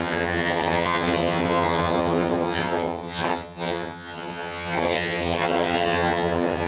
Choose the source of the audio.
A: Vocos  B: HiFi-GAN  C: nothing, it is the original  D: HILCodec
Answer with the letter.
B